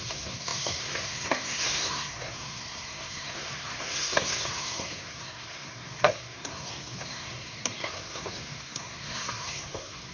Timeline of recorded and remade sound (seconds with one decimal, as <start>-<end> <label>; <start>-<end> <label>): 0.0-10.1 remade